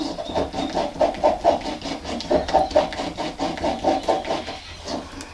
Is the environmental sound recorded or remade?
recorded